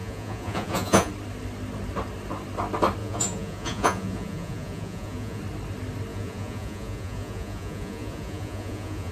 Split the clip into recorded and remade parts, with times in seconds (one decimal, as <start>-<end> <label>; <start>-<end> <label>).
0.0-1.1 remade; 1.1-3.0 recorded; 3.0-5.4 remade; 5.4-6.1 recorded; 6.1-9.1 remade